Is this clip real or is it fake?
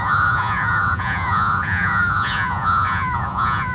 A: fake